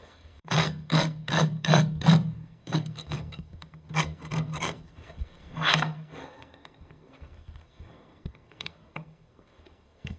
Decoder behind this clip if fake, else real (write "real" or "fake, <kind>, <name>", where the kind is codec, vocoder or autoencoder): fake, codec, SNAC